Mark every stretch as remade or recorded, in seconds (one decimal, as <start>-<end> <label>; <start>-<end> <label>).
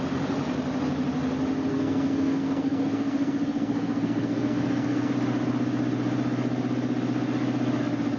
0.0-1.7 recorded; 1.7-5.1 remade; 5.1-8.2 recorded